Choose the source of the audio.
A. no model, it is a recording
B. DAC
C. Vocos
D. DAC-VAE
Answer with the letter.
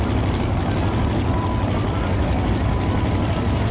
A